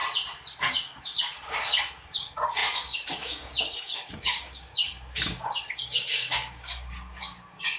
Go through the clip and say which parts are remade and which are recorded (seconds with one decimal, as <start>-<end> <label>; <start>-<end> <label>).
0.0-0.6 recorded; 0.6-7.8 remade